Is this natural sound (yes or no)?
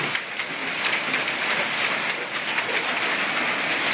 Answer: yes